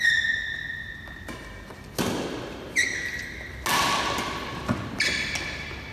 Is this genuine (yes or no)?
yes